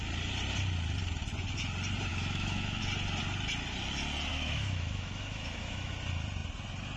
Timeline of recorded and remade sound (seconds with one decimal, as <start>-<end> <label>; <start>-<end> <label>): 0.0-2.1 recorded; 2.1-2.8 remade; 2.8-4.3 recorded; 4.3-5.9 remade; 5.9-7.0 recorded